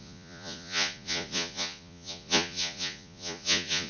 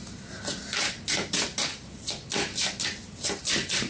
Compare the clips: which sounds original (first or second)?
second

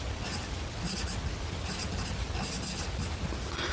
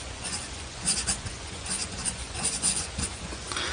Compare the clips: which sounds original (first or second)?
first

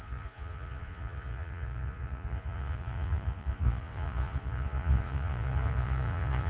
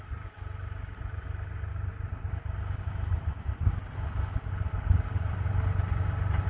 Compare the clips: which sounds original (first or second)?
second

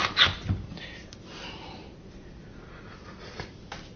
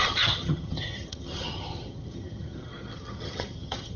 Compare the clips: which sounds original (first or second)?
first